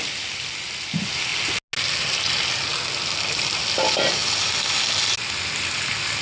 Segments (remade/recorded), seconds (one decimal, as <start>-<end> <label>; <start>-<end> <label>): 0.0-6.2 recorded